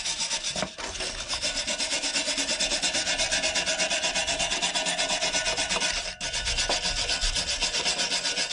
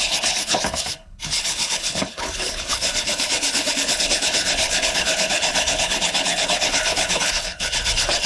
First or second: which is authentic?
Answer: first